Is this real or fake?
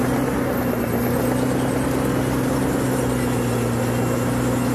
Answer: real